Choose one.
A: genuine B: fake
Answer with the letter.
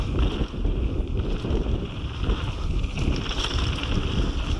A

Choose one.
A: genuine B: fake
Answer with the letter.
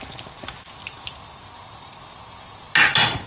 A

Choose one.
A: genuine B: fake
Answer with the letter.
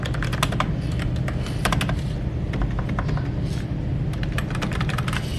A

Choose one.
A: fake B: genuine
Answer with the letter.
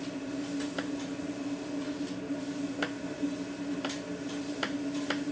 B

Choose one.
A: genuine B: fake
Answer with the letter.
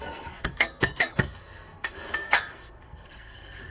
B